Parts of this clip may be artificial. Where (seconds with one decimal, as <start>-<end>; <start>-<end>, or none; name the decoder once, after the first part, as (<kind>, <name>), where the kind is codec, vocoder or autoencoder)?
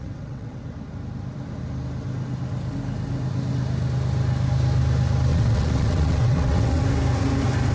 0.0-0.6 (vocoder, WaveNeXt); 5.3-6.8